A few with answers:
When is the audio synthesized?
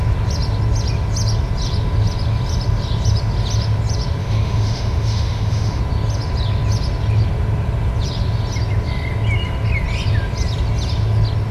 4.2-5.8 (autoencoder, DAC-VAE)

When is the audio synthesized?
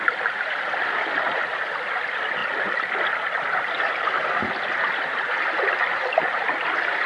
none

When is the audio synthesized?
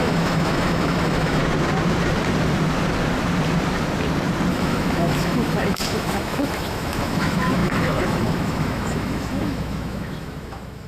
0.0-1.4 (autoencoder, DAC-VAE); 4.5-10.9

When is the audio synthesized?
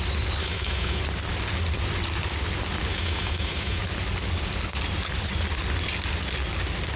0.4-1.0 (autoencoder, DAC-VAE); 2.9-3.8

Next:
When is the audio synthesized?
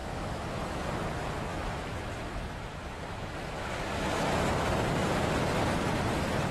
0.0-0.9 (autoencoder, DAC-VAE); 1.5-4.7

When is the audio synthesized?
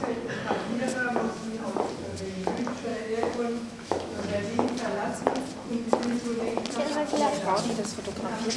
0.9-1.7 (autoencoder, DAC-VAE); 2.9-4.2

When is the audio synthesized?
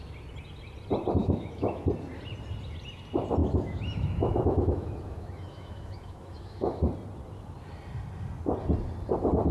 1.2-1.9 (autoencoder, DAC-VAE); 3.4-6.8